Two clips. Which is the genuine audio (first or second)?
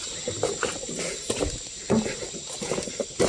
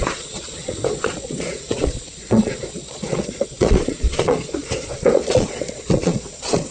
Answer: first